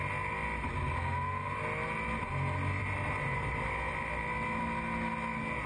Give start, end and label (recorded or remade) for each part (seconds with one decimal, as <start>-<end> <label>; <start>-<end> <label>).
0.0-5.7 recorded